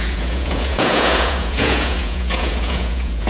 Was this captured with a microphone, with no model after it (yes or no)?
no